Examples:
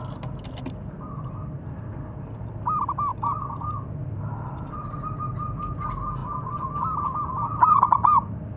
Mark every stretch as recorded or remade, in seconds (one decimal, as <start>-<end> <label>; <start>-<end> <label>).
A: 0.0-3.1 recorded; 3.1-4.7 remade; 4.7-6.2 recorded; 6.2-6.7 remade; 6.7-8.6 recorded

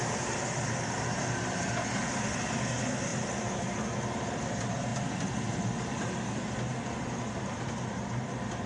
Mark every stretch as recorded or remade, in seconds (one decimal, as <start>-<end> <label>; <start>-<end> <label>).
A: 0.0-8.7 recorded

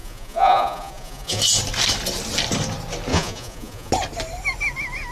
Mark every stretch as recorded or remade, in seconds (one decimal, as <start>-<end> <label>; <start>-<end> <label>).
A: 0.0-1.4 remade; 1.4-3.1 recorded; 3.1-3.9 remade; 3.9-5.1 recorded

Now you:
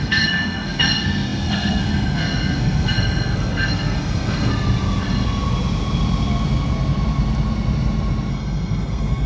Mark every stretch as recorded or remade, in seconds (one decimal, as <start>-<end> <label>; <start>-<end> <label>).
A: 0.0-4.5 remade; 4.5-8.3 recorded; 8.3-9.3 remade

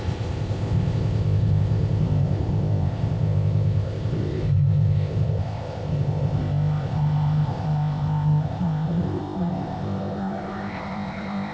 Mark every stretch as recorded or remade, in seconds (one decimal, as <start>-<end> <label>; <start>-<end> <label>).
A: 0.0-11.5 remade